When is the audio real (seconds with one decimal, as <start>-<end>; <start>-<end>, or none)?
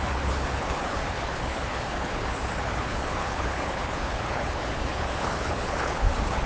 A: none